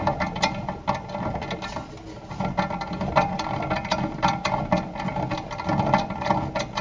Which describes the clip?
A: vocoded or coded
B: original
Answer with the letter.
B